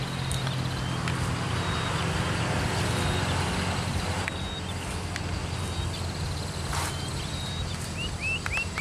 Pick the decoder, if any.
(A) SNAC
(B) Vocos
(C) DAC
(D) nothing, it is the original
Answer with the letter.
D